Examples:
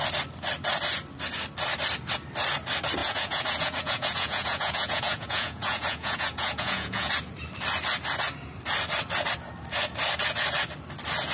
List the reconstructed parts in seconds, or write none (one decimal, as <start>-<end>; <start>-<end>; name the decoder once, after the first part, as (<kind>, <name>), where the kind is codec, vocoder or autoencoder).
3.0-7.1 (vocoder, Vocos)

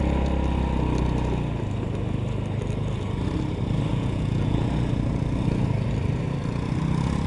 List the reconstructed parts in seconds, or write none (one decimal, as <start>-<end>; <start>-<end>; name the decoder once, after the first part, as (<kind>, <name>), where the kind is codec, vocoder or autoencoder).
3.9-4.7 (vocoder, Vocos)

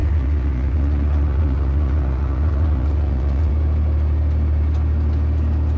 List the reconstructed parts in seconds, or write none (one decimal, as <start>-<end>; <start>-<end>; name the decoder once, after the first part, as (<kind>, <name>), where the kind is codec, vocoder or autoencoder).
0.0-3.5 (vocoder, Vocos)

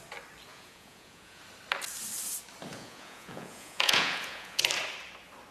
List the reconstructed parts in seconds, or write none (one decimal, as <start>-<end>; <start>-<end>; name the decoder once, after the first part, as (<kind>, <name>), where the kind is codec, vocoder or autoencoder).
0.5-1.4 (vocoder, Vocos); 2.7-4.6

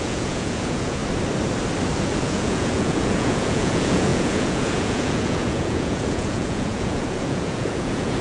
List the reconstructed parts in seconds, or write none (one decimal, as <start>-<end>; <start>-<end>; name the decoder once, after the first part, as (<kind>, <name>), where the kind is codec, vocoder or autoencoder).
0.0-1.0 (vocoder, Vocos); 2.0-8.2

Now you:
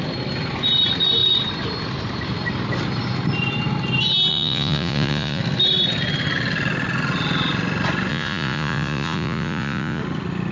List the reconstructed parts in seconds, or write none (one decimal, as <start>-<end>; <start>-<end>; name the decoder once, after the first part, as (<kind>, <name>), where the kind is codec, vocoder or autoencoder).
4.3-5.4 (vocoder, Vocos); 8.1-10.0

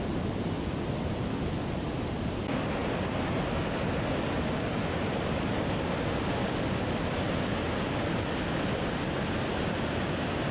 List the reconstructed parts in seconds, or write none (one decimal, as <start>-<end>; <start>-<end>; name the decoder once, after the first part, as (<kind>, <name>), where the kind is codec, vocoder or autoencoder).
none